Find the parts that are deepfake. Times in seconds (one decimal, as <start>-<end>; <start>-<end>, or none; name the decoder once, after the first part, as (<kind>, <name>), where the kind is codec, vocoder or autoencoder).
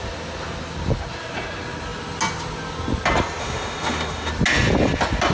3.4-4.3 (autoencoder, DAC-VAE)